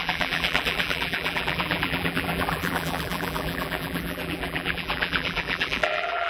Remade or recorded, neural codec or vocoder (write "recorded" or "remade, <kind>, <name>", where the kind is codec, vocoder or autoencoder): remade, vocoder, BigVGAN v2